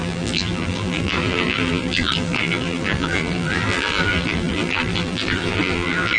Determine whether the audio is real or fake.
fake